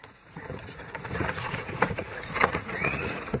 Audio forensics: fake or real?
fake